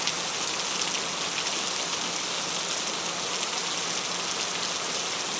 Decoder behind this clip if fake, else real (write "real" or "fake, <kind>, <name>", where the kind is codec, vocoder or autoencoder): real